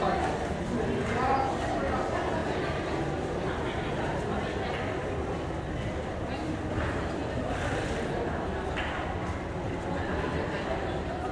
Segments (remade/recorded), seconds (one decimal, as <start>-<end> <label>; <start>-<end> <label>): 0.0-11.3 recorded